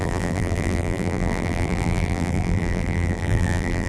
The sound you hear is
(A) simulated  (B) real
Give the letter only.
A